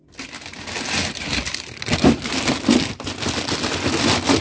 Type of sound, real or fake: real